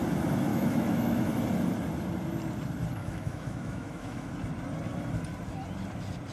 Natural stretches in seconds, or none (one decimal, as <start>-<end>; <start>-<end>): 0.0-0.5; 1.3-3.0; 4.3-6.3